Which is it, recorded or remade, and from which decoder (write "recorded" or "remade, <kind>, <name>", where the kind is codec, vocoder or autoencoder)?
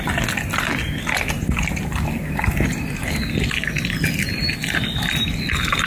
recorded